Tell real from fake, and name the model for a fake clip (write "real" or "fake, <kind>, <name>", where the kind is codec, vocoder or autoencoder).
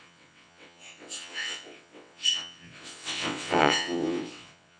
fake, vocoder, WaveNeXt